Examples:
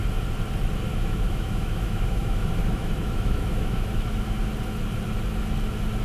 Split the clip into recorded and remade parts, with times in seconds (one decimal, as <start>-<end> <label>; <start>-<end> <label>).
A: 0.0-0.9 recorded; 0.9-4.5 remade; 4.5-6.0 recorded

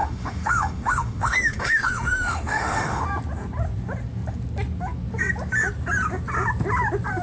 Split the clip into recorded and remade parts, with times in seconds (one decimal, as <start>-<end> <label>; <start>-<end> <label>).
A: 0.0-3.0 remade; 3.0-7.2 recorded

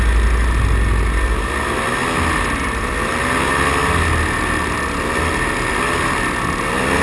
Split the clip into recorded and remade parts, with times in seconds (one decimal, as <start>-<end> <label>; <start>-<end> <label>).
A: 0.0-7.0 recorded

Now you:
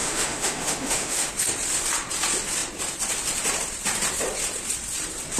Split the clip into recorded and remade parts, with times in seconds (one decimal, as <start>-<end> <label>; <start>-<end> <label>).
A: 0.0-1.3 remade; 1.3-5.4 recorded

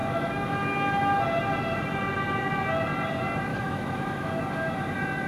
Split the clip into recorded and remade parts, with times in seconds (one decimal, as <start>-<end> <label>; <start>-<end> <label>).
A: 0.0-0.5 remade; 0.5-3.5 recorded; 3.5-4.4 remade; 4.4-5.3 recorded